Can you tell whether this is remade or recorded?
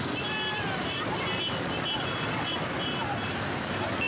recorded